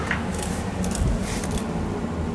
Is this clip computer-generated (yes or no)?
no